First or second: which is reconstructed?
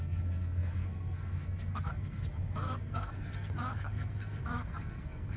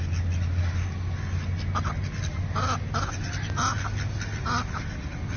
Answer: first